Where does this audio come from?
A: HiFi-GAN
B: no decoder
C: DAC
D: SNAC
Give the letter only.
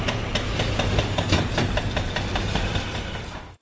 B